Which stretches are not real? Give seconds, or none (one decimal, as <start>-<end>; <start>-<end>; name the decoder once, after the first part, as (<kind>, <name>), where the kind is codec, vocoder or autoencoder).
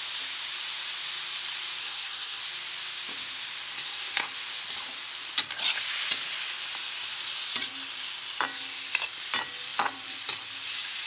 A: 1.8-2.4 (codec, SNAC); 3.7-4.3